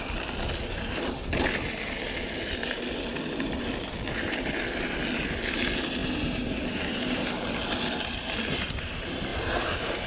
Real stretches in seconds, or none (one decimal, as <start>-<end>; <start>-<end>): 0.0-10.1